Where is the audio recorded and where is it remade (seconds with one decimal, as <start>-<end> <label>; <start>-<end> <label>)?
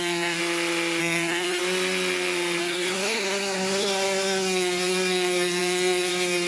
0.0-0.4 remade; 0.4-1.0 recorded; 1.0-1.6 remade; 1.6-2.6 recorded; 2.6-6.5 remade